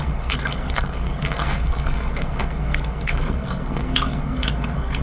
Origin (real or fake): fake